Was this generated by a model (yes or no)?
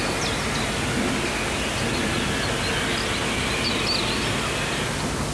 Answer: no